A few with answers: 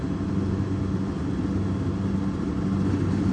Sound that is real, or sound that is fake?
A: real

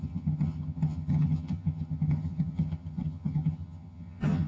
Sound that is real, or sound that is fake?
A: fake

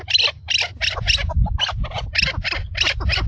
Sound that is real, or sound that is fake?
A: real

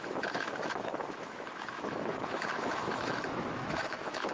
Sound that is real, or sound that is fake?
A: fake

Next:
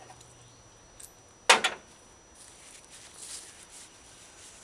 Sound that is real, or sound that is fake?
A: real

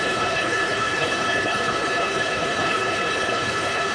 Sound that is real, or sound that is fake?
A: fake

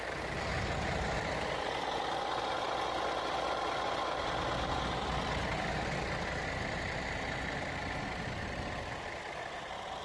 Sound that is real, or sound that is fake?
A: real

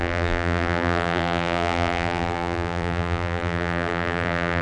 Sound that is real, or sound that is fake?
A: fake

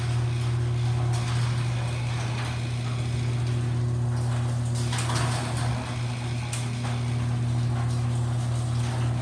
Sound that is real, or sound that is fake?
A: real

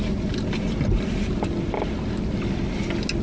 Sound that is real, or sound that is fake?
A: real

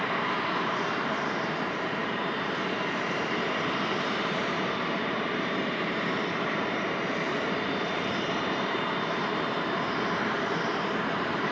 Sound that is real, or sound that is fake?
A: fake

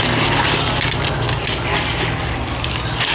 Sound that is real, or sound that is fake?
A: real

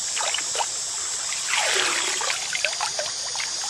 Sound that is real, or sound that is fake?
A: real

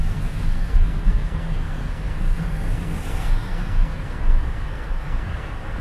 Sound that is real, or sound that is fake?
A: fake